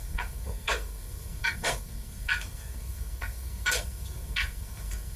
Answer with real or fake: fake